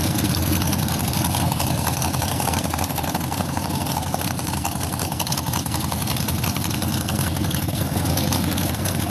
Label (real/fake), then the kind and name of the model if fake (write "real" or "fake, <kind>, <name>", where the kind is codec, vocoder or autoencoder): fake, codec, SNAC